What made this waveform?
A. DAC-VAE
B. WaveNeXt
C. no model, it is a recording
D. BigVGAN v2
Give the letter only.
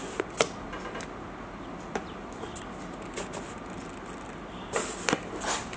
C